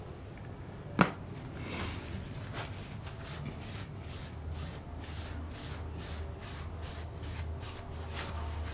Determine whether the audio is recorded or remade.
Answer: recorded